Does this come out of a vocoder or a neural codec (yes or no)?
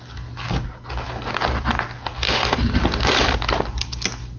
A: no